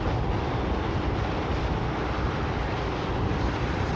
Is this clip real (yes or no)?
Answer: yes